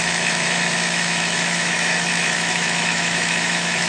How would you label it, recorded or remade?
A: remade